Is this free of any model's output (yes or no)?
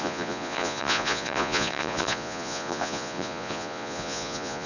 no